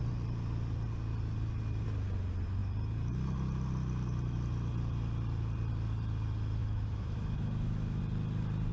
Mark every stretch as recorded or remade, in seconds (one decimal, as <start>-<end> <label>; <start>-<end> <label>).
0.0-6.6 recorded; 6.6-8.0 remade; 8.0-8.7 recorded